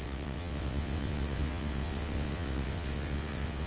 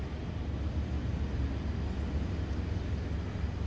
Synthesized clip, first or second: first